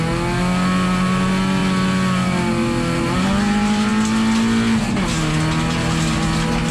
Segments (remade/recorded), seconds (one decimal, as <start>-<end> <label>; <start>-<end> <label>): 0.0-6.7 recorded